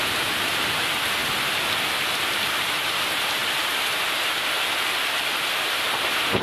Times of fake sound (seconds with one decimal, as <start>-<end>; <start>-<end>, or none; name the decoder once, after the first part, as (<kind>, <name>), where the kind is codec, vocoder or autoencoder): 0.0-1.2 (vocoder, BigVGAN v2); 2.3-3.4; 5.6-6.4